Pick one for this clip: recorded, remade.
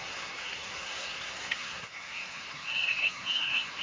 remade